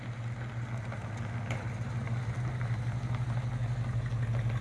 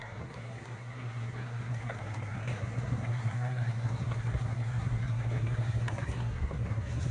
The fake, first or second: second